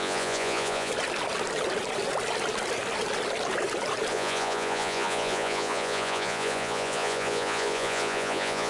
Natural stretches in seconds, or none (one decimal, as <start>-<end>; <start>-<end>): 0.9-4.1